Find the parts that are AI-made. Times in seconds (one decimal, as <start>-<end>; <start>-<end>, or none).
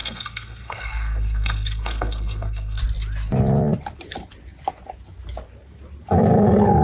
0.0-2.8